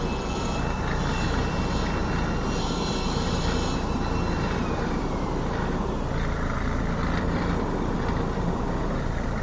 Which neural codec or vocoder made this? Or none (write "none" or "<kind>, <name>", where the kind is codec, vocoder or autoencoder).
vocoder, BigVGAN v2